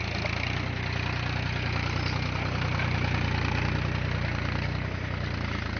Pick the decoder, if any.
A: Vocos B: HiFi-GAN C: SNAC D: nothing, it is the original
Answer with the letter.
D